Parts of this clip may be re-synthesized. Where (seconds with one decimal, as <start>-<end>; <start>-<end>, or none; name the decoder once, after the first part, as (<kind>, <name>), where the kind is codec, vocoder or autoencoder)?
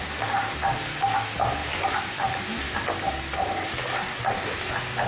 none